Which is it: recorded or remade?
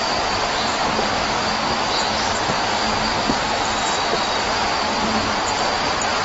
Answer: recorded